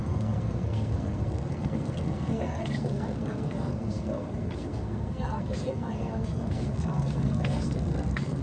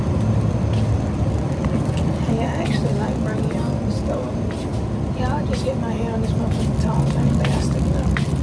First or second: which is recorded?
second